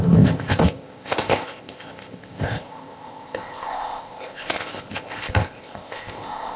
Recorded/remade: remade